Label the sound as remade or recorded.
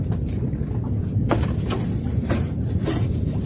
recorded